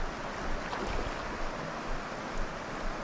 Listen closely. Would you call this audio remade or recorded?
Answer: recorded